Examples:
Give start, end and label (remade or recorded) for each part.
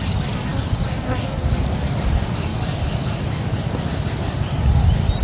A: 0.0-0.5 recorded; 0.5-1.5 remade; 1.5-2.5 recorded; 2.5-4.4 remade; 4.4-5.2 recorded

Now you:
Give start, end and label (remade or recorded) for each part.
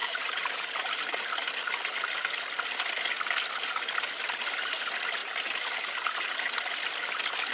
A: 0.0-1.3 remade; 1.3-5.2 recorded; 5.2-6.4 remade; 6.4-7.5 recorded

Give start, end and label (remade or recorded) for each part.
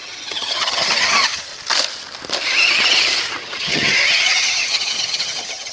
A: 0.0-1.5 remade; 1.5-3.4 recorded; 3.4-5.7 remade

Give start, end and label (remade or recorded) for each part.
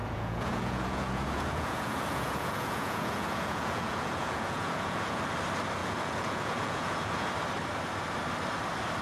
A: 0.0-5.2 remade; 5.2-5.8 recorded; 5.8-7.3 remade; 7.3-9.0 recorded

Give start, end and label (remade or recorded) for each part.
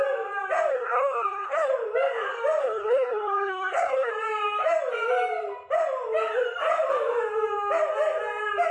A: 0.0-0.7 recorded; 0.7-1.7 remade; 1.7-2.6 recorded; 2.6-4.1 remade; 4.1-8.7 recorded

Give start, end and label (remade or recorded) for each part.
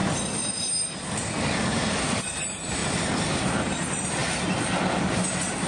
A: 0.0-2.2 remade; 2.2-2.8 recorded; 2.8-3.7 remade; 3.7-4.2 recorded; 4.2-5.0 remade; 5.0-5.7 recorded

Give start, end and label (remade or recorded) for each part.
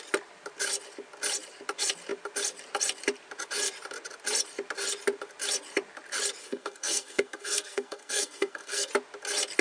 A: 0.0-6.4 recorded; 6.4-8.9 remade; 8.9-9.6 recorded